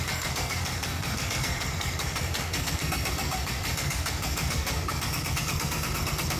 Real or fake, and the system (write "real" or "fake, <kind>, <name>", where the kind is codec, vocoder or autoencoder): fake, codec, SNAC